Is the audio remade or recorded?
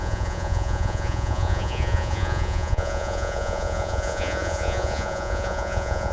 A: remade